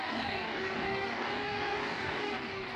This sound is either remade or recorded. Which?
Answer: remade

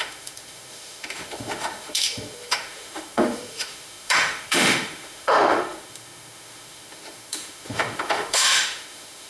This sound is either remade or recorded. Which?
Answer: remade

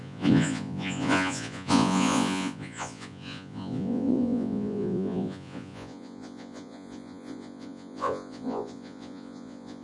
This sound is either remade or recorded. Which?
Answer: remade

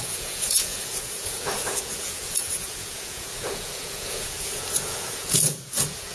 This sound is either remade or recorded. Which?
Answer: remade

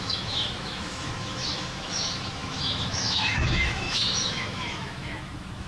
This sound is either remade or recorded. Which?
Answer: remade